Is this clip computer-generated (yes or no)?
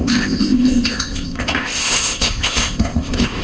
yes